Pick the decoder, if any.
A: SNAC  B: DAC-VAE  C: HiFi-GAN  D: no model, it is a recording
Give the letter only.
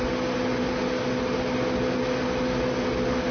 D